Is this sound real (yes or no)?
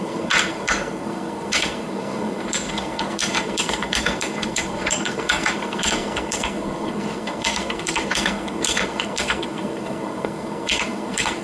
no